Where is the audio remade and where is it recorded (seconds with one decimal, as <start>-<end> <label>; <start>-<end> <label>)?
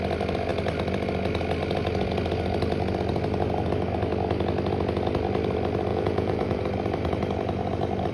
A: 0.0-5.9 recorded; 5.9-6.6 remade; 6.6-8.1 recorded